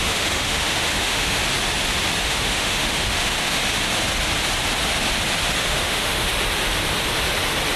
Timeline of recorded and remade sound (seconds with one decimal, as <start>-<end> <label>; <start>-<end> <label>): 0.0-1.4 remade; 1.4-2.2 recorded; 2.2-3.6 remade; 3.6-5.6 recorded; 5.6-6.3 remade; 6.3-7.8 recorded